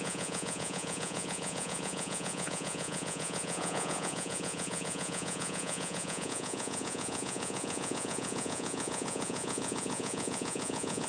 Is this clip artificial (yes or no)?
yes